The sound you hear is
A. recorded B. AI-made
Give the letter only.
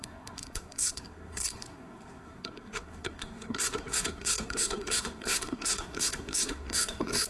B